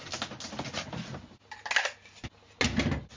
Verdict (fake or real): real